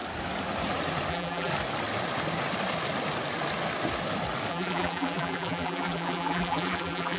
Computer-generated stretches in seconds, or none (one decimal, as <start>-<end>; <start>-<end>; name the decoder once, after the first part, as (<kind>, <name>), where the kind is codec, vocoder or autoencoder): 1.1-1.5 (vocoder, BigVGAN v2); 4.5-7.2